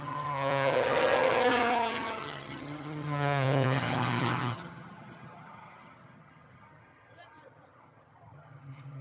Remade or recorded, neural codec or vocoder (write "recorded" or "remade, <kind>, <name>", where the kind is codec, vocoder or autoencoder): remade, vocoder, HiFi-GAN